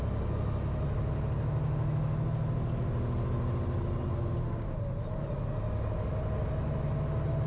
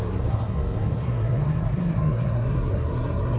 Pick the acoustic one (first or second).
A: first